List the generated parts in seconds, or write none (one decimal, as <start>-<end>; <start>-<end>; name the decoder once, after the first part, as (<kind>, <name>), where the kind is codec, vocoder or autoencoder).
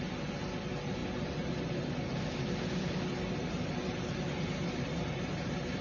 none